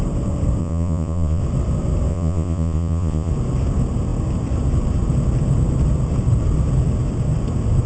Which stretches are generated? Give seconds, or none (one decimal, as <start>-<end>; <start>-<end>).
0.6-1.4; 2.1-3.3